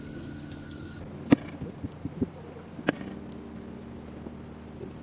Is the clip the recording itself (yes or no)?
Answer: yes